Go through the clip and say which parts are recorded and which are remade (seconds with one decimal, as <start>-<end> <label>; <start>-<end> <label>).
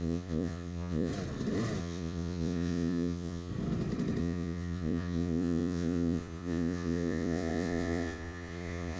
0.0-1.1 remade; 1.1-1.8 recorded; 1.8-3.5 remade; 3.5-4.2 recorded; 4.2-9.0 remade